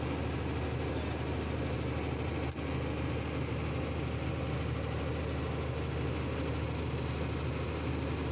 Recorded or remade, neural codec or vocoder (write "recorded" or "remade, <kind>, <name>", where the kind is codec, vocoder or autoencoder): recorded